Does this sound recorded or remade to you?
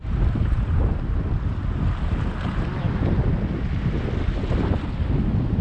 recorded